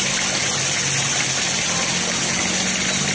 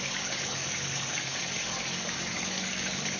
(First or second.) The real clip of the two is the first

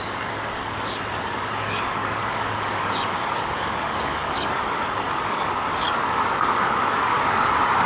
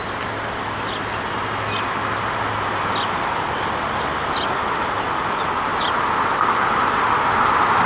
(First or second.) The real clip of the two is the second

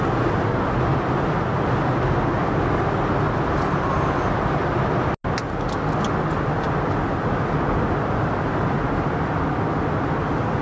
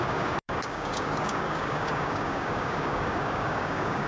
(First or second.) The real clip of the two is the first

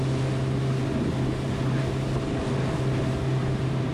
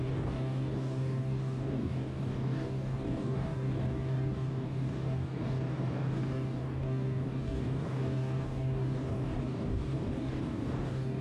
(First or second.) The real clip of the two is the first